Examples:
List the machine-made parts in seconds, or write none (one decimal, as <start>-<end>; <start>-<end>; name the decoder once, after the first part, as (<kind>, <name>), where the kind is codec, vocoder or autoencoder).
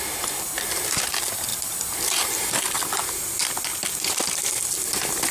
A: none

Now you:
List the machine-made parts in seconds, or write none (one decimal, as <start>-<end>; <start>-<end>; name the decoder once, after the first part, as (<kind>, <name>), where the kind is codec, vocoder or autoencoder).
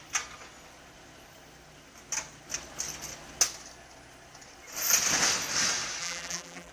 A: 6.0-6.7 (vocoder, BigVGAN v2)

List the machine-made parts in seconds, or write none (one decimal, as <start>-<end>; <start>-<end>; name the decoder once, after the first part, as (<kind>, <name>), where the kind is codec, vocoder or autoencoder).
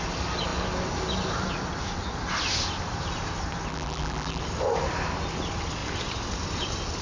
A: 3.7-4.4 (vocoder, BigVGAN v2)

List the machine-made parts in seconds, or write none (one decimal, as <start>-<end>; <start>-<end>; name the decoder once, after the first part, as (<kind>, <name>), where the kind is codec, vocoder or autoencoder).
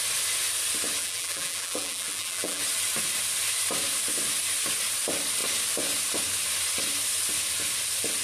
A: 1.0-2.6 (vocoder, BigVGAN v2)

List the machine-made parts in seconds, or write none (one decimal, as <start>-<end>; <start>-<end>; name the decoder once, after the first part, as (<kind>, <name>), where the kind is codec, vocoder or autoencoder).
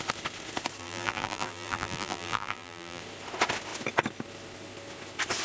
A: 0.8-3.0 (vocoder, BigVGAN v2)